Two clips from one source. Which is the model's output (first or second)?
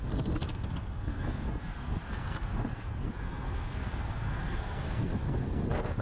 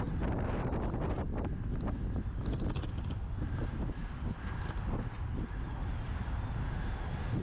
first